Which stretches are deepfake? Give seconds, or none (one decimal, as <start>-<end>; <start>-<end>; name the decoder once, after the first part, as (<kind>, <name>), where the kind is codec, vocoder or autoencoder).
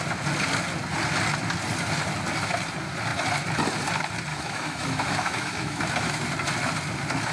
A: 4.3-5.8 (autoencoder, DAC-VAE)